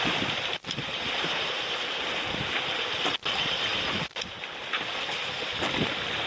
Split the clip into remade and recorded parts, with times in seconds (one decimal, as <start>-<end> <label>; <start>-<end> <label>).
0.0-0.6 recorded; 0.6-1.5 remade; 1.5-6.3 recorded